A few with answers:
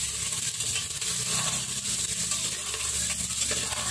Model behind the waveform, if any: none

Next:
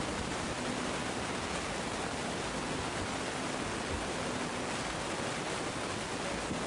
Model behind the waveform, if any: none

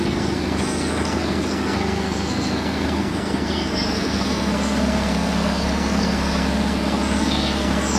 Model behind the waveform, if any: codec, SNAC